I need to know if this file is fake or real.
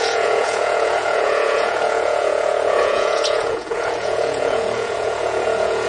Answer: fake